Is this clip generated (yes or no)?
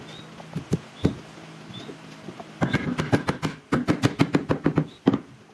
no